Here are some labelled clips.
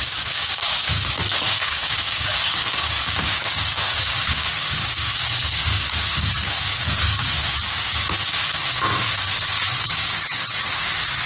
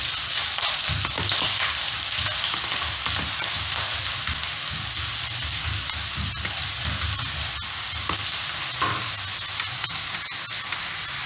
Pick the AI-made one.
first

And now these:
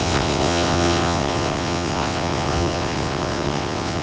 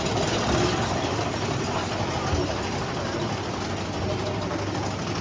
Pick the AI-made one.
first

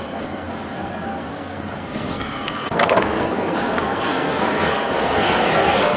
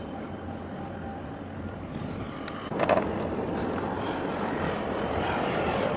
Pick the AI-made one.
first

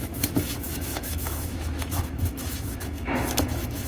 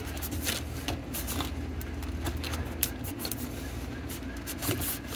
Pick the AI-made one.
first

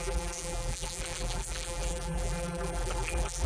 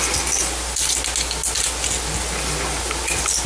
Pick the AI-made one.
first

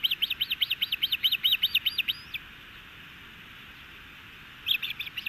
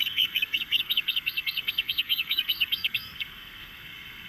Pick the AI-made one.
second